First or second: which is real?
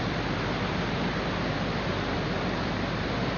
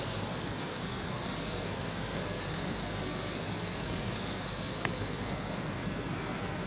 first